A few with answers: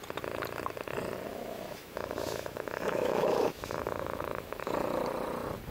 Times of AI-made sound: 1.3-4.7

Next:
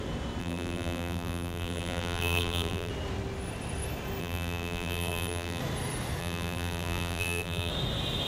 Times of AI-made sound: 0.4-2.9; 4.2-5.6; 6.2-7.7

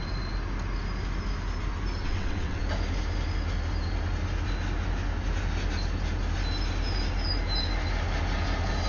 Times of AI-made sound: 2.0-2.6

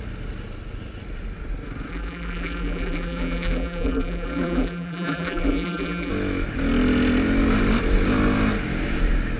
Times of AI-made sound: 1.9-6.1